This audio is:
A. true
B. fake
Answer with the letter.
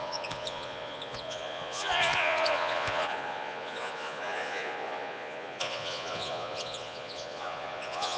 B